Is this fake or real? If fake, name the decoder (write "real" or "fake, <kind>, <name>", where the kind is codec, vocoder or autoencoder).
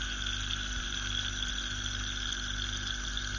real